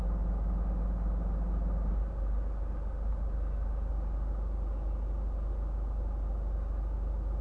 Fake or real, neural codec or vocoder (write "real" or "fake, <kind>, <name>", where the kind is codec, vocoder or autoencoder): real